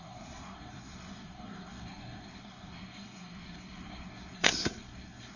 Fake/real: fake